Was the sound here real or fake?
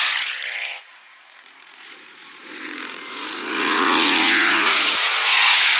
fake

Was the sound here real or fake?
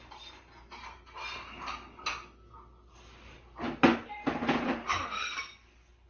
real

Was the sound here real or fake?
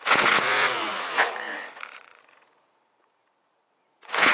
fake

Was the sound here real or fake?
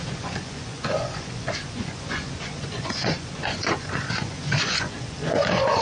fake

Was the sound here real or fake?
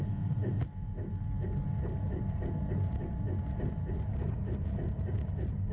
real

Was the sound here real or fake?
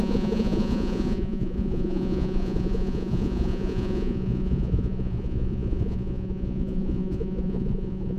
fake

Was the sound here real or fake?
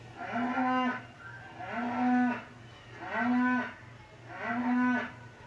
real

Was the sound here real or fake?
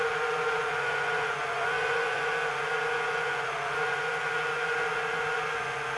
fake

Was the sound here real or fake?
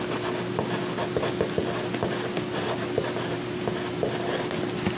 real